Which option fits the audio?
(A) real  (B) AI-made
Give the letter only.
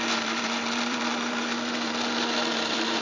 B